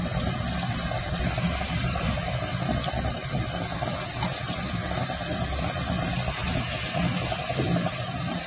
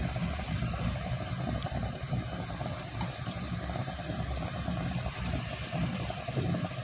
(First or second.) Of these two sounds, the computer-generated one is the second